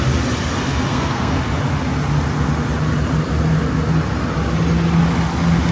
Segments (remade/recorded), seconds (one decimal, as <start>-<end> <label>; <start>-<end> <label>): 0.0-0.9 recorded; 0.9-1.4 remade; 1.4-5.7 recorded